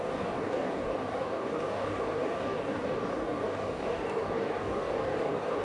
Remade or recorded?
remade